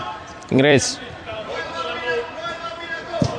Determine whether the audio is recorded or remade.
remade